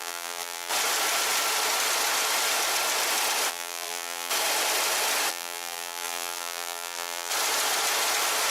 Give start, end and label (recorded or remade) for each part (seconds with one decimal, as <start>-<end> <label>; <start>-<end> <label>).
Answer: 0.0-0.7 remade; 0.7-3.5 recorded; 3.5-4.3 remade; 4.3-5.3 recorded; 5.3-7.3 remade; 7.3-8.5 recorded